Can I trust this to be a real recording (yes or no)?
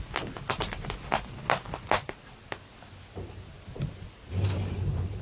yes